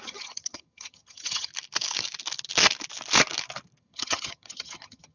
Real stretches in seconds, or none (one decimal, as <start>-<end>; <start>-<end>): 1.5-3.8